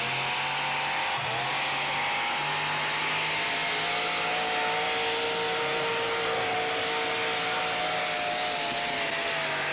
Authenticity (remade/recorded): recorded